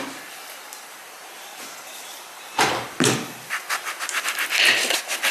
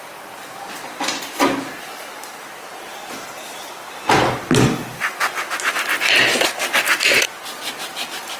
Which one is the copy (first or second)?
first